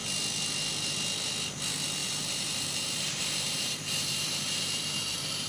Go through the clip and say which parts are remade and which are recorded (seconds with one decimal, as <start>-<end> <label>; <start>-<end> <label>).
0.0-2.0 recorded; 2.0-5.5 remade